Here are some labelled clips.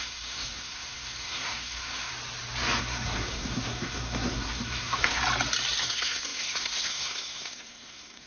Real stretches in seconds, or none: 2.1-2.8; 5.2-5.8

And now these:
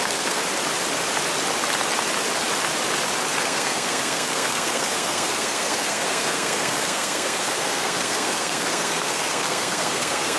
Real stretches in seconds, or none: 0.4-3.4

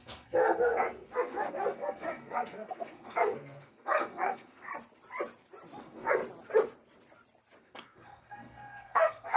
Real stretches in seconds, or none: 4.7-5.8; 6.2-7.6

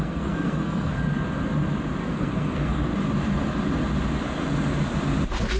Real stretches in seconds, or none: 1.1-2.1; 2.9-5.6

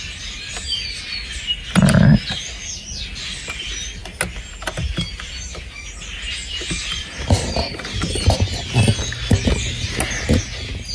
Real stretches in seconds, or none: 0.0-10.9

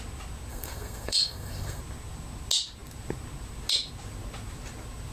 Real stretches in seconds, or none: 0.0-0.5; 1.8-5.1

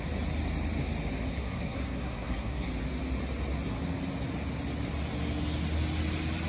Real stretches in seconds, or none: 0.0-1.3; 2.7-6.5